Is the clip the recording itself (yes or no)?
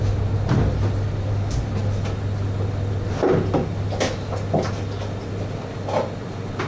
yes